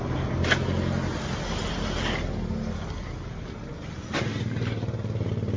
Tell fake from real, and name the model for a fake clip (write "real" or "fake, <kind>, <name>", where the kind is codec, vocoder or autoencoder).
real